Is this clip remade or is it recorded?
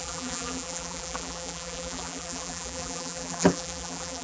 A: remade